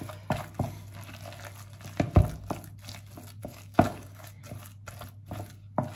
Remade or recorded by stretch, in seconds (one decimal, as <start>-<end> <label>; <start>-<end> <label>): 0.0-3.4 recorded; 3.4-4.4 remade; 4.4-6.0 recorded